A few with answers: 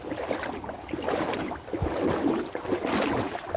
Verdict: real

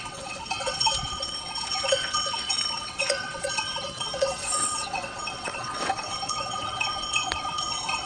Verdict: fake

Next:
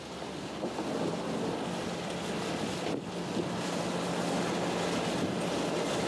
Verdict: real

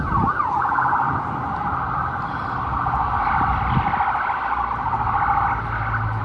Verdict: real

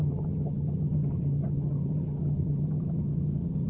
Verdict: fake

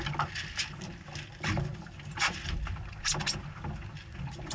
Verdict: real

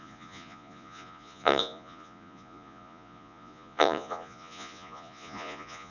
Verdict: fake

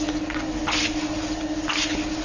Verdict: real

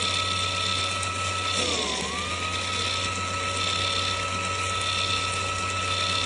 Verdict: real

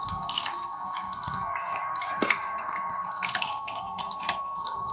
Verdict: fake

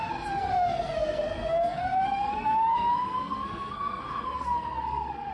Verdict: fake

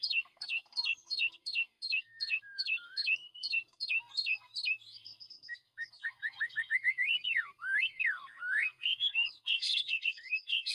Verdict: fake